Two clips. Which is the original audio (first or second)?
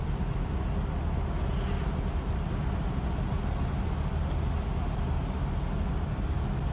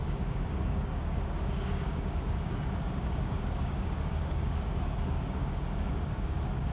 first